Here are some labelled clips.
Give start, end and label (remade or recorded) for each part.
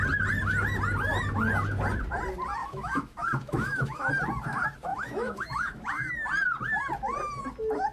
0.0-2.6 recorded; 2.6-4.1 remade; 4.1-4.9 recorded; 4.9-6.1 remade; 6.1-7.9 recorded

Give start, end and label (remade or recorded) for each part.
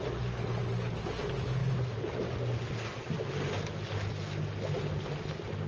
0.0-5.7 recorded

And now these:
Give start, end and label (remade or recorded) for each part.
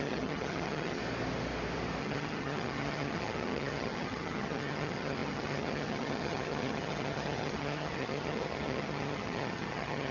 0.0-1.0 remade; 1.0-2.0 recorded; 2.0-10.1 remade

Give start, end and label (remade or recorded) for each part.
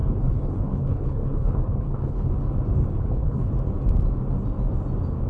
0.0-2.3 remade; 2.3-2.9 recorded; 2.9-3.5 remade; 3.5-5.3 recorded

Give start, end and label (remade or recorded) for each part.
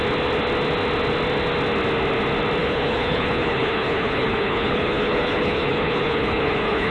0.0-2.6 recorded; 2.6-6.9 remade